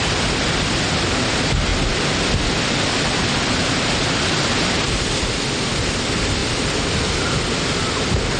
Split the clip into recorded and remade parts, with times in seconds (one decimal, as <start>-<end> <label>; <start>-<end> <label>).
0.0-8.4 recorded